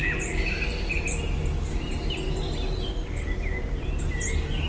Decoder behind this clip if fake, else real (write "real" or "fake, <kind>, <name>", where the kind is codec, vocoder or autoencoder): real